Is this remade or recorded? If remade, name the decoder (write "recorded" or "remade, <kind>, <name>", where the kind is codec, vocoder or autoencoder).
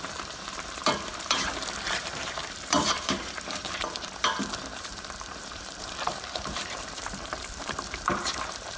remade, vocoder, BigVGAN v2